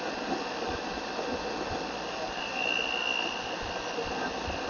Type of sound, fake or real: real